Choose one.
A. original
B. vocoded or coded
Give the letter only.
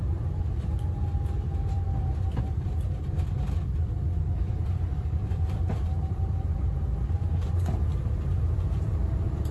B